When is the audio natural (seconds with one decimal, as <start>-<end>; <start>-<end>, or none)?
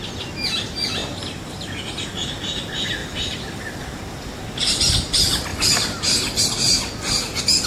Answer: 0.0-1.0; 1.5-3.0; 4.0-5.5; 6.0-7.7